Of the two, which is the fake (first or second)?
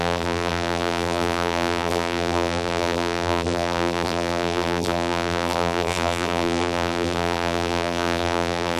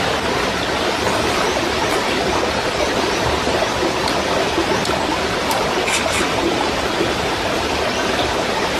first